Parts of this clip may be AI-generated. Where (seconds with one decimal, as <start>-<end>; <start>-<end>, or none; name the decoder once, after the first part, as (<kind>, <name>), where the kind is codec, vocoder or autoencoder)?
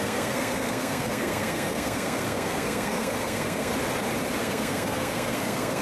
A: 0.0-3.7 (codec, SNAC); 4.4-5.8